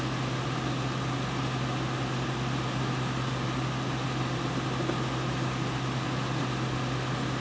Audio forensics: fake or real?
real